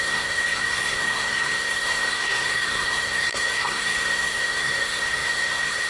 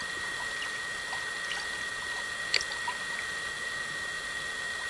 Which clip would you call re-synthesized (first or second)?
first